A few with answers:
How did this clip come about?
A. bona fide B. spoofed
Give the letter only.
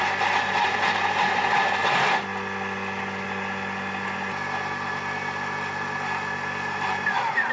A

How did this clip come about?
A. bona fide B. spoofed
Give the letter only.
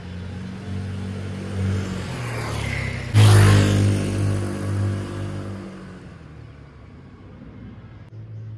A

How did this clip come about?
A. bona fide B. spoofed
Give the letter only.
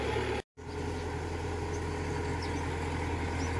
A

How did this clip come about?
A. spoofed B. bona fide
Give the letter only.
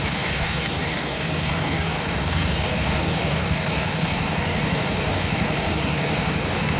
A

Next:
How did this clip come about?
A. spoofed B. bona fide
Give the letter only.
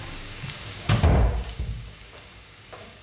A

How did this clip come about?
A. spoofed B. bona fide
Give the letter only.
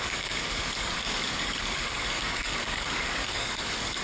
A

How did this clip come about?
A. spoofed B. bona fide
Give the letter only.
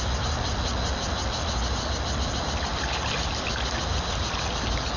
B